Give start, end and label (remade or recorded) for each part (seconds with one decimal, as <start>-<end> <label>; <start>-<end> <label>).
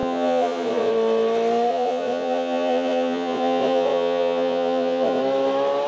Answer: 0.0-0.9 remade; 0.9-1.7 recorded; 1.7-5.2 remade; 5.2-5.9 recorded